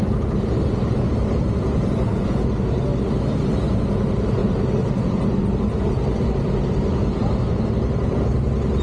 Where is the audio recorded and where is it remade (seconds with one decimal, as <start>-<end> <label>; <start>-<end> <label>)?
0.0-8.8 recorded